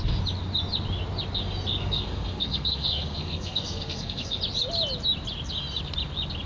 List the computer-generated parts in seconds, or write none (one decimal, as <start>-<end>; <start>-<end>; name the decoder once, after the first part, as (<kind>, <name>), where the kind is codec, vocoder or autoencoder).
1.8-4.4 (codec, SNAC)